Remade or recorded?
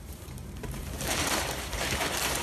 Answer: remade